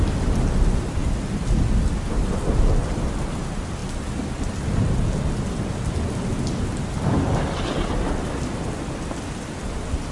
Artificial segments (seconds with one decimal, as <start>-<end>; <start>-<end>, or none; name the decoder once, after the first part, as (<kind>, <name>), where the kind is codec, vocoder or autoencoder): none